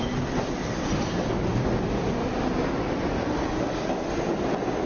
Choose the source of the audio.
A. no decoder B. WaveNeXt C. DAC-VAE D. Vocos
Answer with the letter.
A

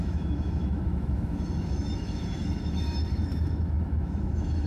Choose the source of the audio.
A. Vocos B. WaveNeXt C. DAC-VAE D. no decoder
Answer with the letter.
C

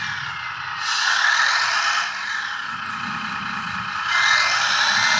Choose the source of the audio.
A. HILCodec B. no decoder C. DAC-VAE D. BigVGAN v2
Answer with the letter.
B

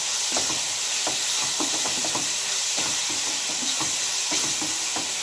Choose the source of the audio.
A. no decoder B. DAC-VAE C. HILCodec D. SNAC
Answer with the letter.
A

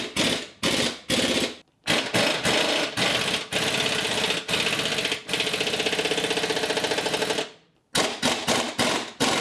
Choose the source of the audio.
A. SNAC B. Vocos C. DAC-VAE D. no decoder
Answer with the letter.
D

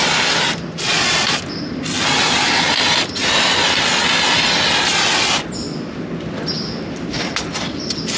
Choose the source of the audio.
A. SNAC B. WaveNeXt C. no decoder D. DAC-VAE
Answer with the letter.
C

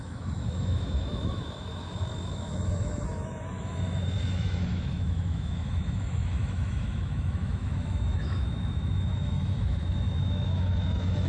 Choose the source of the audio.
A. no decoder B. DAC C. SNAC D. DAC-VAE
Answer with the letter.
D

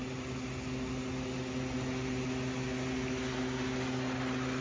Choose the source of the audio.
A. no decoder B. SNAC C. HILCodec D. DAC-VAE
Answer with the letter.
A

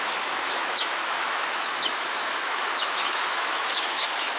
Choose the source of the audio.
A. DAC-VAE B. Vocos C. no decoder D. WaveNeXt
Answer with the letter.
A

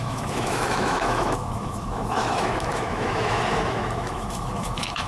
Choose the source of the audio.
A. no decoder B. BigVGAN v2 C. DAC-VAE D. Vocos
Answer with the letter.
C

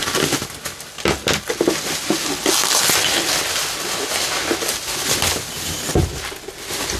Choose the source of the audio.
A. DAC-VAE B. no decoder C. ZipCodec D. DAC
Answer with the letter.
B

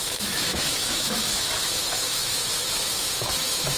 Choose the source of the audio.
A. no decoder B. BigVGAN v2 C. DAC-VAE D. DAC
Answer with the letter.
C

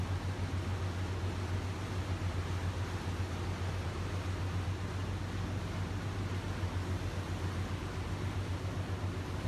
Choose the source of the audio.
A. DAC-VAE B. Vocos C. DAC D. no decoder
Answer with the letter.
D